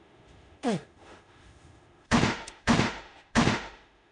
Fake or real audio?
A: fake